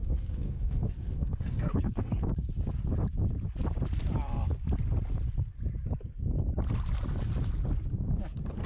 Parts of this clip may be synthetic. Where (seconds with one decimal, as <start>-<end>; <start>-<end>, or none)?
0.0-2.3